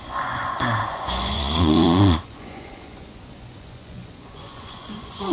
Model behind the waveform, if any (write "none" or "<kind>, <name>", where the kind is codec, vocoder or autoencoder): vocoder, Vocos